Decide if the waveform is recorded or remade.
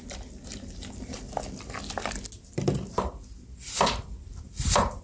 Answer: recorded